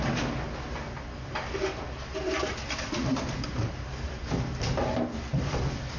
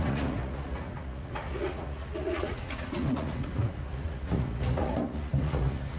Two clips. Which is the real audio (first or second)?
first